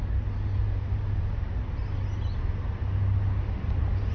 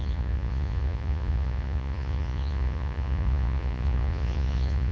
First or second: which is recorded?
first